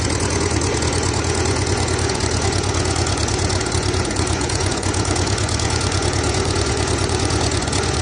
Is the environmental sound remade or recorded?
remade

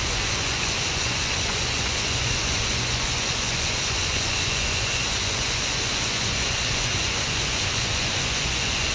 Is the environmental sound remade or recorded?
remade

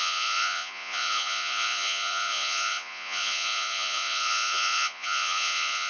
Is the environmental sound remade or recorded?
remade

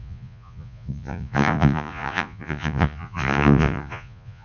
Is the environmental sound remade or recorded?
remade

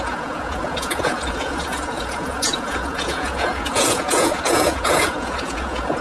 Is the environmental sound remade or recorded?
remade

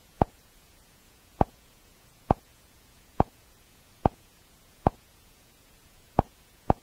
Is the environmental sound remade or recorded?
remade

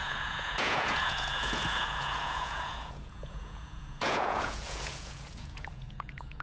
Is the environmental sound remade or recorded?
remade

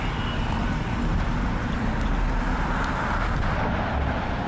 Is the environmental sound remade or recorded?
recorded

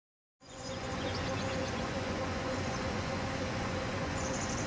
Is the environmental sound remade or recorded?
remade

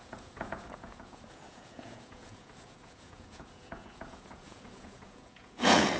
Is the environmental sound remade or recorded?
remade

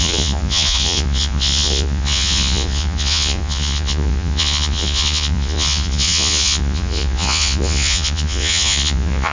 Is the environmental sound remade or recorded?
remade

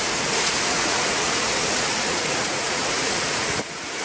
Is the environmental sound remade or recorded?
remade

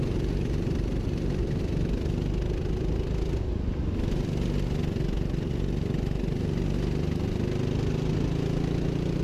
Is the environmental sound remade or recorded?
recorded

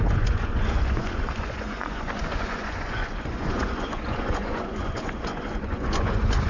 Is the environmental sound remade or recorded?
remade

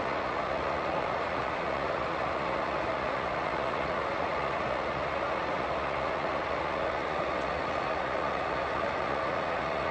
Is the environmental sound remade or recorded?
remade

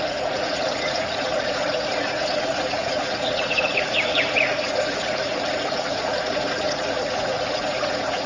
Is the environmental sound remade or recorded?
remade